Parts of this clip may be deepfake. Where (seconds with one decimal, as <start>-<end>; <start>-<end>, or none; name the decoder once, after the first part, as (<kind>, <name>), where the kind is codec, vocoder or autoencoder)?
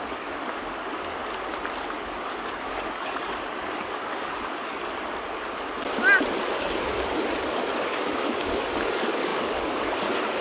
0.0-1.2 (codec, DAC); 1.9-4.8; 6.6-10.4